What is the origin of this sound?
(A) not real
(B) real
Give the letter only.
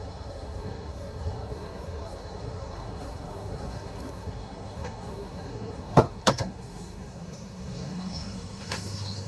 A